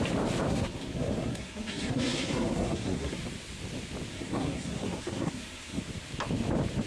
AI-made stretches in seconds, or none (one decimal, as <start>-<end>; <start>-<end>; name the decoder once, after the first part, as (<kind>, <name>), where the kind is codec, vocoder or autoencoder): 0.5-3.1 (codec, SNAC); 4.1-5.8